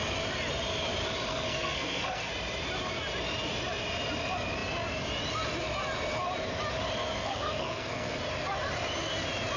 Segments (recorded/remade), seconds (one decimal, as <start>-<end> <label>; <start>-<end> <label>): 0.0-1.3 recorded; 1.3-2.3 remade; 2.3-7.2 recorded; 7.2-8.2 remade; 8.2-9.6 recorded